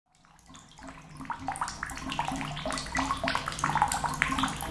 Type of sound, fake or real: real